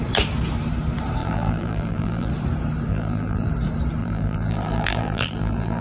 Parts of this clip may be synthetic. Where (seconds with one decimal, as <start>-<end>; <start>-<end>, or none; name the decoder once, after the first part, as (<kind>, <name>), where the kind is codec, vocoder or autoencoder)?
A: 1.2-2.3 (vocoder, BigVGAN v2); 2.9-3.5; 4.0-5.8